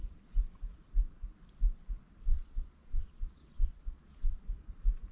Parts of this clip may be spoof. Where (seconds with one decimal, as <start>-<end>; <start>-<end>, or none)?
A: 2.3-4.4